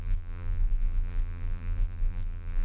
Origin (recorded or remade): remade